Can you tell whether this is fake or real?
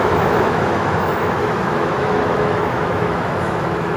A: fake